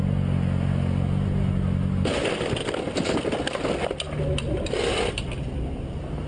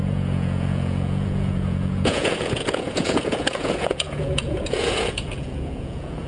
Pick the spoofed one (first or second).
second